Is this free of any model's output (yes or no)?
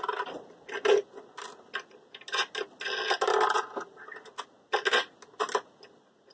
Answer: yes